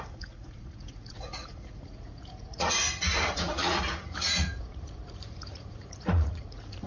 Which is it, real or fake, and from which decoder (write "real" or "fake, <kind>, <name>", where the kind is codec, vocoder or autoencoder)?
fake, vocoder, Vocos